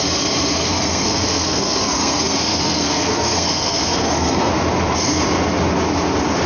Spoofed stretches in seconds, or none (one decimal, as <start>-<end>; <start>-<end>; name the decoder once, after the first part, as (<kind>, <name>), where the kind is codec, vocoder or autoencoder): 0.6-4.5 (codec, SNAC)